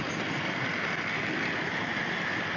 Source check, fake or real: real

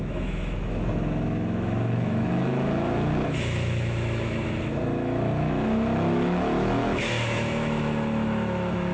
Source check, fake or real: fake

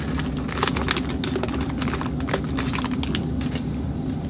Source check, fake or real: real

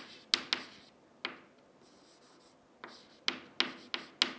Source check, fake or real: real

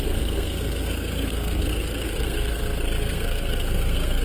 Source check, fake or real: fake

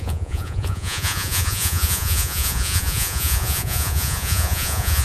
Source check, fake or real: fake